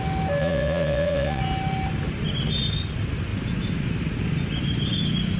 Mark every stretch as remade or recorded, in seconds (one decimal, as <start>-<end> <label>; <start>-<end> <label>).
0.0-0.4 recorded; 0.4-1.4 remade; 1.4-5.4 recorded